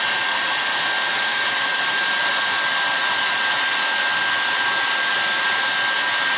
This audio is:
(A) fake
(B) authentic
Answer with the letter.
B